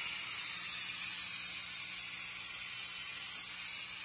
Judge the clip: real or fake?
real